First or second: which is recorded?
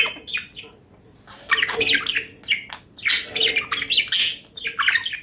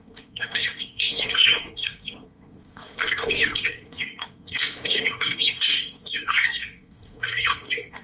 first